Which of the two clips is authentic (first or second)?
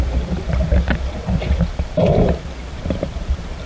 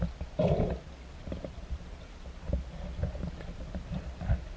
second